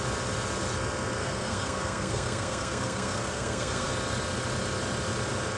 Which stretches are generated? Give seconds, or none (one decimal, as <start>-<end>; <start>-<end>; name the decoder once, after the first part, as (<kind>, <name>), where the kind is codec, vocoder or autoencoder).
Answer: 1.2-3.9 (codec, SNAC)